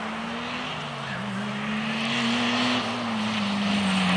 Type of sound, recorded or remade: recorded